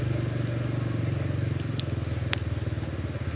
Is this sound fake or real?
real